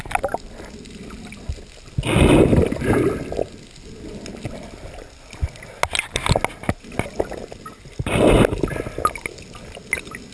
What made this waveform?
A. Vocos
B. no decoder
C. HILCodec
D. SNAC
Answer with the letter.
B